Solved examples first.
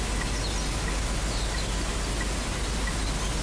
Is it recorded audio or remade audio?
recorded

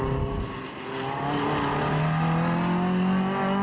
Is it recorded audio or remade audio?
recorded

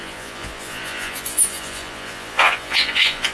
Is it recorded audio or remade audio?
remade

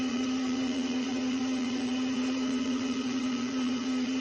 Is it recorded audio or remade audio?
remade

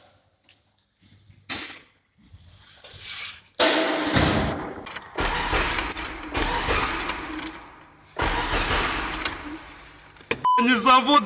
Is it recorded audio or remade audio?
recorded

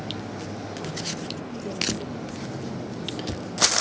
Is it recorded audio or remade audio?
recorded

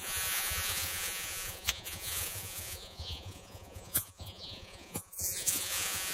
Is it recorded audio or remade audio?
remade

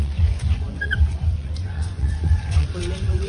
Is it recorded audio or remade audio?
remade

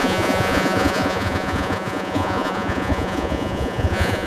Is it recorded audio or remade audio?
remade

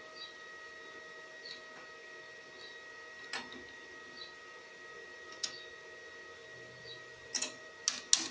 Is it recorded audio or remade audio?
recorded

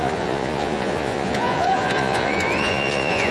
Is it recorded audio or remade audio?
remade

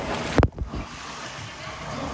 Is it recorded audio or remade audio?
recorded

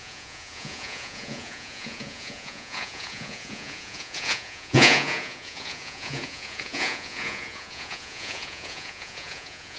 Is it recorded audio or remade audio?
remade